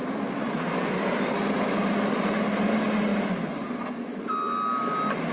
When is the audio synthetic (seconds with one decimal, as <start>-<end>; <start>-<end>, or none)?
0.0-1.3